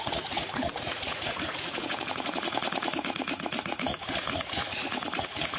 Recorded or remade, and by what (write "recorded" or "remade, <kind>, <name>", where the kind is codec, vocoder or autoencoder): remade, vocoder, Vocos